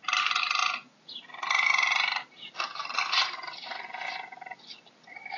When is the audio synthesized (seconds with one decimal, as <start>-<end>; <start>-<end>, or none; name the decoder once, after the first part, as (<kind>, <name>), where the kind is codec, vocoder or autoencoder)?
none